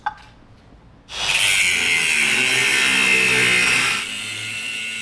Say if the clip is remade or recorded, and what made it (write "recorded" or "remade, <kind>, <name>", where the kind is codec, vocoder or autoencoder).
recorded